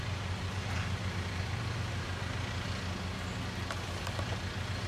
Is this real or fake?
real